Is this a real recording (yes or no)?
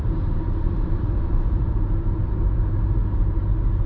no